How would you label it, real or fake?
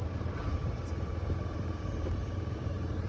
fake